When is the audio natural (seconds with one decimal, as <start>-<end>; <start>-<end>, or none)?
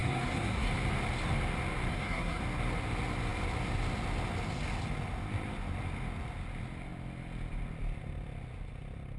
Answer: 0.7-1.9; 2.4-9.2